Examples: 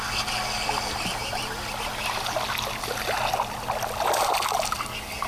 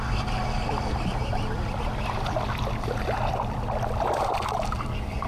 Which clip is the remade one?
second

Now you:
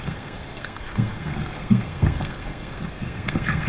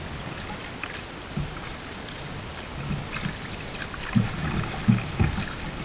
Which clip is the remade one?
first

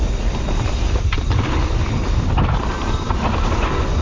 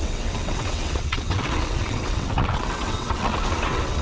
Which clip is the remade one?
second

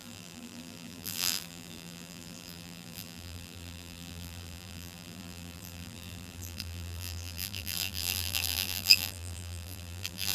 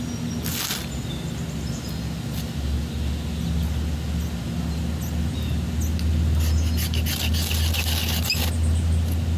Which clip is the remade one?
first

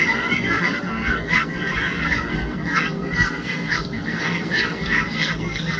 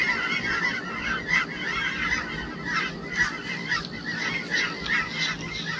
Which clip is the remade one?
first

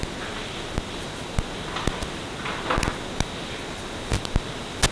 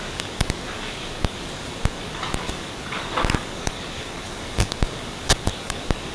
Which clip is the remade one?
second